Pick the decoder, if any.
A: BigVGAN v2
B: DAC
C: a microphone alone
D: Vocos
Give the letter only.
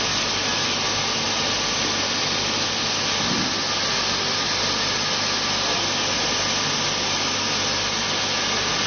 C